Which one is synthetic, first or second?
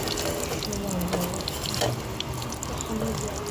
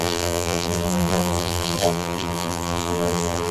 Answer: second